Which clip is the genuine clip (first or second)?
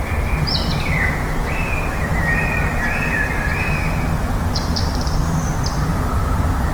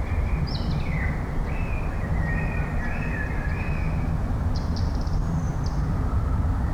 first